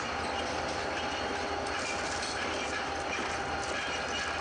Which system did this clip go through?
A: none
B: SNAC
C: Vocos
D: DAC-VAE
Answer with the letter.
A